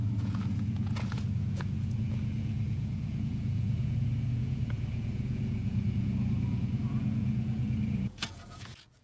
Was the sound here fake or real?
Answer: fake